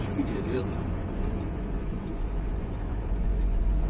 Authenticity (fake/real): fake